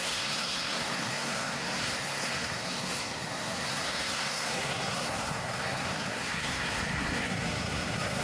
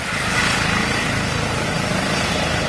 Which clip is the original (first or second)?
second